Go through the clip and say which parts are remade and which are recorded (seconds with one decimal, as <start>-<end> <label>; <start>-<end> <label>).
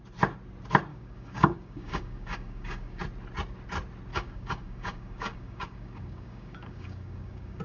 0.0-0.9 recorded; 0.9-3.0 remade; 3.0-4.1 recorded; 4.1-7.6 remade